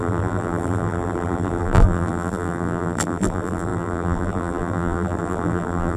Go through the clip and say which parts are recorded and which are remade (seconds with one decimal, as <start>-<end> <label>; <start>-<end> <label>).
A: 0.0-6.0 remade